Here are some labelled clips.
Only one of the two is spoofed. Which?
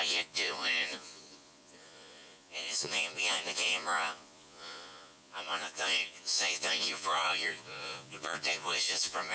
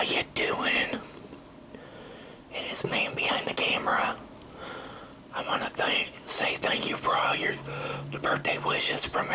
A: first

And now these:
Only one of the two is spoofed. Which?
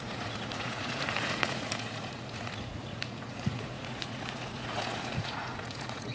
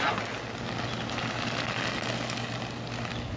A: first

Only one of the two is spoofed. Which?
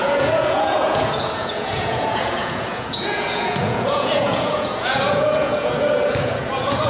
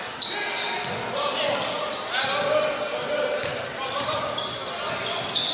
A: first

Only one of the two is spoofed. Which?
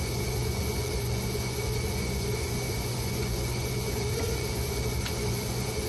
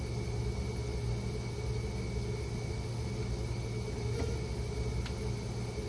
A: first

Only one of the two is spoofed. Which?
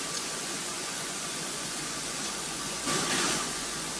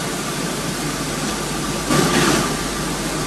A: first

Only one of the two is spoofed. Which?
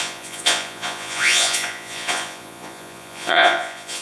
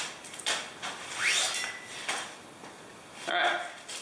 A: first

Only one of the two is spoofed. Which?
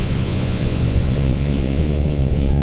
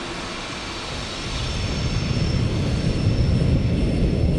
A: first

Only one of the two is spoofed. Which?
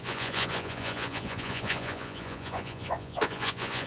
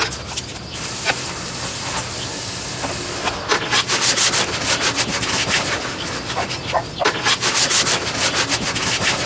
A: first